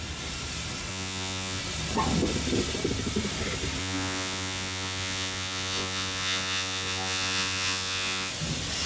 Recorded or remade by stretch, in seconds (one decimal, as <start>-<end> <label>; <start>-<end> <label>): 0.0-0.9 recorded; 0.9-1.6 remade; 1.6-3.8 recorded; 3.8-8.3 remade; 8.3-8.9 recorded